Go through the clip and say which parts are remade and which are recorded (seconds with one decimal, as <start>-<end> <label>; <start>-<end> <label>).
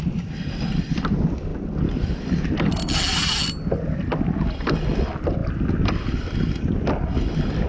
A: 0.0-7.7 recorded